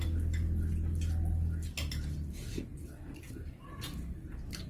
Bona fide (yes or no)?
yes